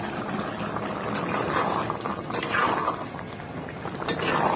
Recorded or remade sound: recorded